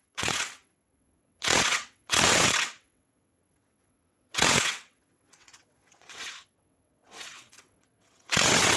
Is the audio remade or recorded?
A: remade